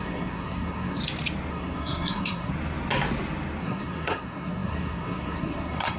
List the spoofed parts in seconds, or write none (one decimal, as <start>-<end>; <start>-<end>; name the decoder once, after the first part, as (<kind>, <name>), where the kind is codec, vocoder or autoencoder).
0.0-1.0 (codec, SNAC); 1.5-2.5; 3.6-6.0